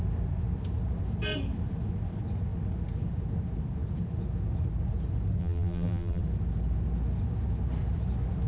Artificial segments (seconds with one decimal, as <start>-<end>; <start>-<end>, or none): 5.4-6.2